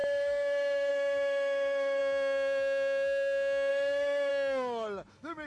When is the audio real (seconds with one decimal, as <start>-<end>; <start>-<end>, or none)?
2.0-3.7; 4.3-5.1